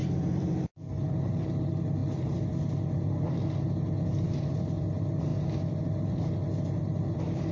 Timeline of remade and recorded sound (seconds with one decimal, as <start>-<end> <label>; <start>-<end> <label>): 0.0-7.5 remade